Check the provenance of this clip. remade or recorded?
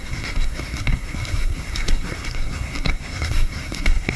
remade